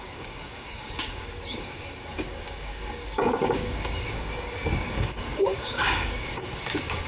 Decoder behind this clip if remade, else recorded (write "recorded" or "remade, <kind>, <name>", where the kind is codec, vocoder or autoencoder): remade, codec, DAC